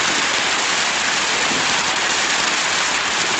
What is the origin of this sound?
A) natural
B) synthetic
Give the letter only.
A